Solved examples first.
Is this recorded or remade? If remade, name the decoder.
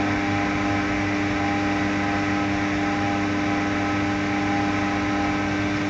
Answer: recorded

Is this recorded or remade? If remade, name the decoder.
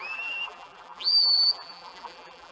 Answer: remade, vocoder, BigVGAN v2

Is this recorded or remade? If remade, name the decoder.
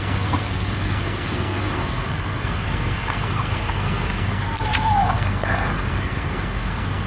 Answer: remade, codec, SNAC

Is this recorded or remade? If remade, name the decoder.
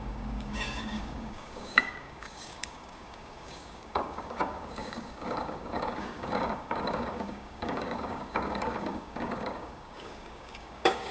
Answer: remade, codec, DAC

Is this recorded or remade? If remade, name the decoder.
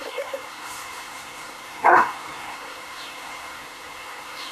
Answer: remade, codec, SNAC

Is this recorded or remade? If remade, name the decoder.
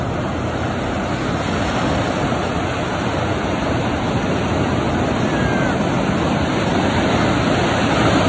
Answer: recorded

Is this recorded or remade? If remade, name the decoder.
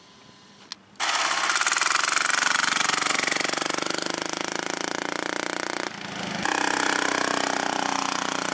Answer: recorded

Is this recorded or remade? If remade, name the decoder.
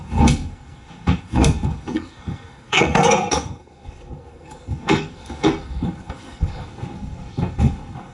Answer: remade, codec, SNAC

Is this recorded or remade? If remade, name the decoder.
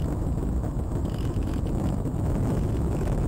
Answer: remade, autoencoder, DAC-VAE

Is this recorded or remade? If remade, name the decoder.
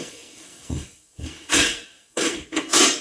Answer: remade, codec, SNAC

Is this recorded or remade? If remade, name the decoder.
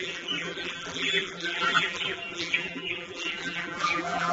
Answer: remade, vocoder, BigVGAN v2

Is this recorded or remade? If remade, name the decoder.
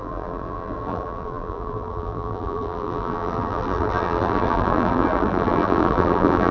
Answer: remade, vocoder, BigVGAN v2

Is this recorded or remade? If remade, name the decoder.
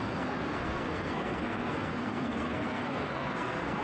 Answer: remade, codec, SNAC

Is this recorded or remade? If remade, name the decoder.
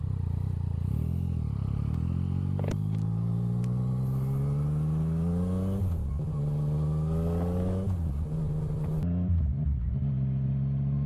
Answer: recorded